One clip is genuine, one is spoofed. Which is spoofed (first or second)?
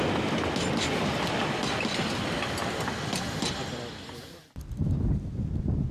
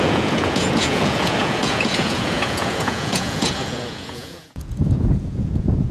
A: second